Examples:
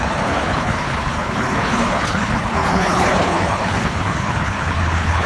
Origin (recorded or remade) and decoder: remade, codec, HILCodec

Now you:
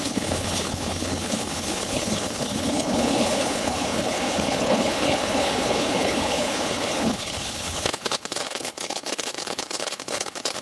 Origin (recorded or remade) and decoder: remade, codec, HILCodec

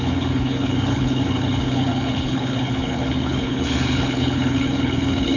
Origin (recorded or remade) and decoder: remade, codec, HILCodec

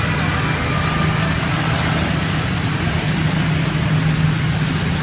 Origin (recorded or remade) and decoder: recorded